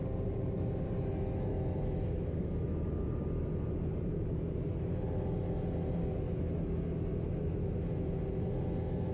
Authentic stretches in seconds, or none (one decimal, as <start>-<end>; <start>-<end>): 0.0-1.5; 3.5-6.0; 8.1-9.1